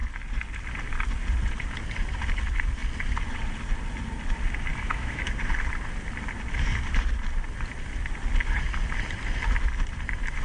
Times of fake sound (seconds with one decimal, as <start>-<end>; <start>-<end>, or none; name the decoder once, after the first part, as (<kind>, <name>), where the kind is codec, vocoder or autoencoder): 4.7-5.3 (autoencoder, DAC-VAE)